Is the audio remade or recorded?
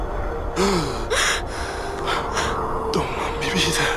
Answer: recorded